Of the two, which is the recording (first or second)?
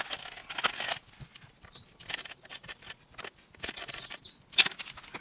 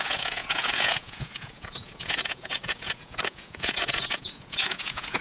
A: first